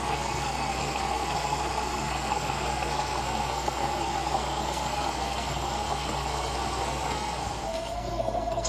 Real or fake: fake